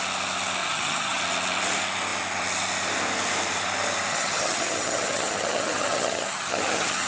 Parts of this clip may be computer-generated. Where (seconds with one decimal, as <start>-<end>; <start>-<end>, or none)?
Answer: 0.6-1.2; 4.1-7.1